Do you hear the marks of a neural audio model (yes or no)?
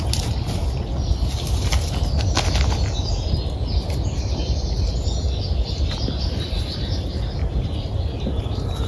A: no